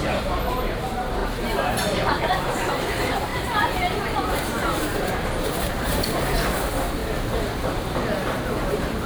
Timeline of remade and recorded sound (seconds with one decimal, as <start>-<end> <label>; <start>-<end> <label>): 0.0-1.2 remade; 1.2-2.1 recorded; 2.1-7.0 remade; 7.0-8.7 recorded; 8.7-9.1 remade